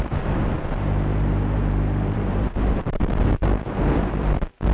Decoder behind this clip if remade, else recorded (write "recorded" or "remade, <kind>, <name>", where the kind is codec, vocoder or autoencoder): remade, vocoder, BigVGAN v2